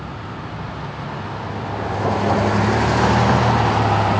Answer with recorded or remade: recorded